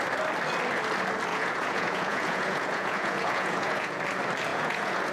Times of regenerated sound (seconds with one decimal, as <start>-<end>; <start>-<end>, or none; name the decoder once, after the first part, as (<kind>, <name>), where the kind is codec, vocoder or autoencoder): 1.3-4.0 (vocoder, Vocos); 4.5-5.1